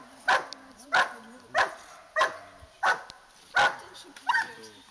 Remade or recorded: recorded